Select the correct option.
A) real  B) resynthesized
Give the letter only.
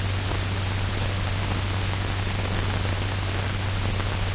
A